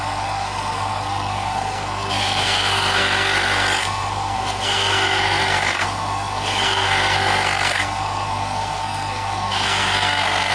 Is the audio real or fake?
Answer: fake